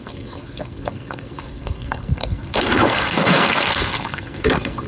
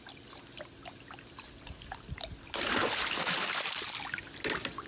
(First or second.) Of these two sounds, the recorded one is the second